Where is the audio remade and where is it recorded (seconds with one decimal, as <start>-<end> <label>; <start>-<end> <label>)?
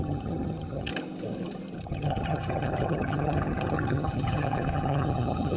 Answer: 0.0-0.9 remade; 0.9-1.8 recorded; 1.8-5.6 remade